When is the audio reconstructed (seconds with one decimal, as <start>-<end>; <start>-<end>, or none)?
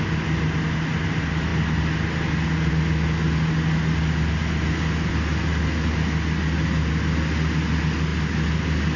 none